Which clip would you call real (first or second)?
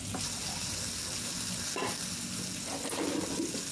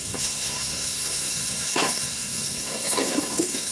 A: first